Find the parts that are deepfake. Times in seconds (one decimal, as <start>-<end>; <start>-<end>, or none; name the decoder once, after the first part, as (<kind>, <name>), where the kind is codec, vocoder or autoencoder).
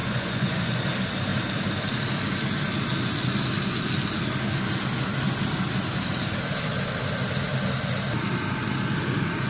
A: 0.0-0.8 (vocoder, Vocos)